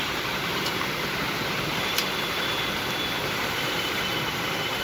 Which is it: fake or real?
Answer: fake